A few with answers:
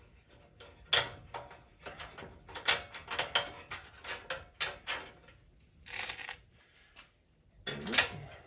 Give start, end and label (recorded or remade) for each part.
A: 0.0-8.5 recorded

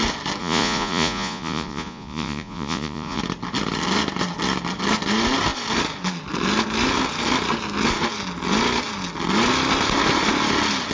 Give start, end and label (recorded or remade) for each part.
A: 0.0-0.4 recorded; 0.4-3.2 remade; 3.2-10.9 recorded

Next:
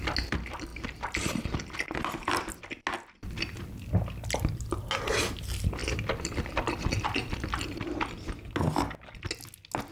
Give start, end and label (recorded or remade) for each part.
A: 0.0-5.8 recorded; 5.8-8.0 remade; 8.0-9.9 recorded

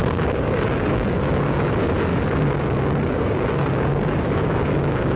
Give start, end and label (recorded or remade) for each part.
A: 0.0-1.7 remade; 1.7-2.1 recorded; 2.1-5.2 remade

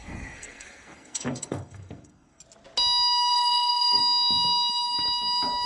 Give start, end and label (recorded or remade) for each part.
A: 0.0-2.4 remade; 2.4-3.3 recorded; 3.3-4.0 remade; 4.0-5.7 recorded